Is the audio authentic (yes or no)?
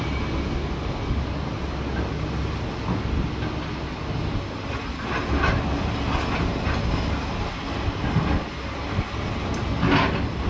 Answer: yes